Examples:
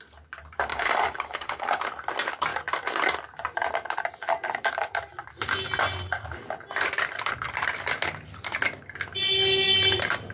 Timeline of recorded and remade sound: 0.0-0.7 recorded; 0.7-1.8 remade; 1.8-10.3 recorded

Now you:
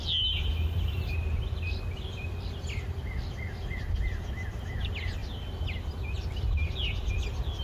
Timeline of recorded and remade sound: 0.0-7.6 recorded